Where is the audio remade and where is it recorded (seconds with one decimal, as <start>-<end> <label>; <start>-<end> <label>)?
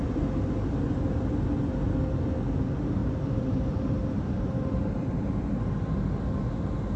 0.0-3.0 recorded; 3.0-5.5 remade; 5.5-7.0 recorded